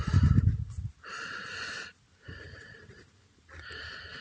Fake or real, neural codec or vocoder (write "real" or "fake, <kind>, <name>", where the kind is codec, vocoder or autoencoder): real